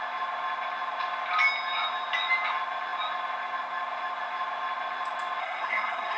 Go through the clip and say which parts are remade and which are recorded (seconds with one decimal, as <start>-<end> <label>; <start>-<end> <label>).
0.0-5.4 recorded; 5.4-6.2 remade